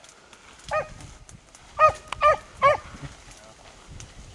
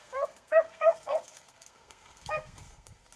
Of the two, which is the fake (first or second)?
second